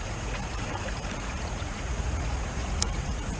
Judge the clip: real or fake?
fake